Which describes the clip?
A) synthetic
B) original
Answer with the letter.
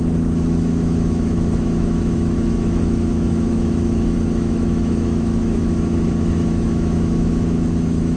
A